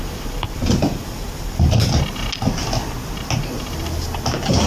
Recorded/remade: recorded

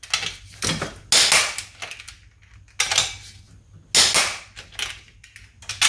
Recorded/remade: recorded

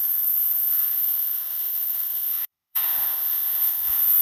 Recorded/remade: remade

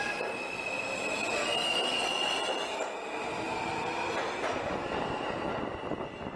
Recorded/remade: recorded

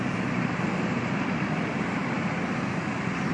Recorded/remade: remade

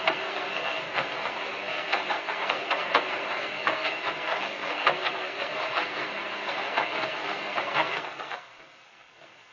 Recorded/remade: remade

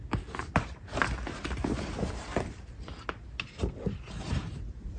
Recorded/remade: recorded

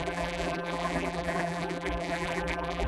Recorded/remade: remade